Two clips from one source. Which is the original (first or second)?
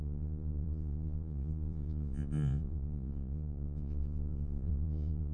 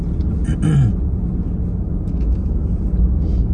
second